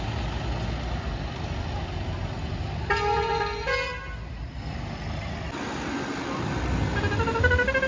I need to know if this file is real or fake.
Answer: real